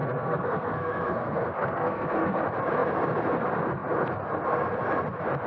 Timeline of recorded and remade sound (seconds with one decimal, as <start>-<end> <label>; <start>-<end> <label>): 0.0-2.4 remade; 2.4-5.5 recorded